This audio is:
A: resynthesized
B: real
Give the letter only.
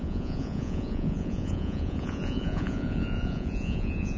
A